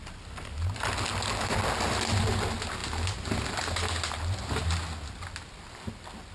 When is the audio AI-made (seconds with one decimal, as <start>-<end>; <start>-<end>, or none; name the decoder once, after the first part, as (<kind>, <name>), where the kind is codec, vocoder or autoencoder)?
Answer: none